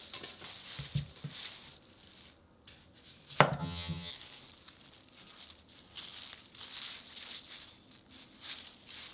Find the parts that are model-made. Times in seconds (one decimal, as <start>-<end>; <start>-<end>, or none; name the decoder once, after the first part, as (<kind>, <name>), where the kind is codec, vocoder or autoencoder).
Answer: 3.6-4.1 (vocoder, HiFi-GAN)